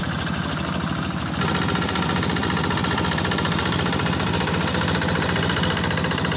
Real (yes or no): yes